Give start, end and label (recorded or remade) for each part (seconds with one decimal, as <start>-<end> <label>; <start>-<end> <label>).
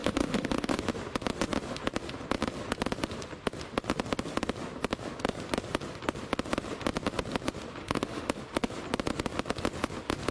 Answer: 0.0-0.8 remade; 0.8-7.8 recorded; 7.8-8.4 remade; 8.4-10.3 recorded